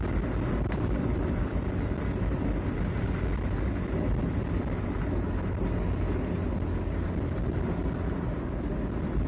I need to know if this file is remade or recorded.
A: recorded